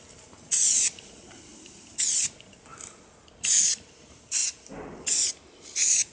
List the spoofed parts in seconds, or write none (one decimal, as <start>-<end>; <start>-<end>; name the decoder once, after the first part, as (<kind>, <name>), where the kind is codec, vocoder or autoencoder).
none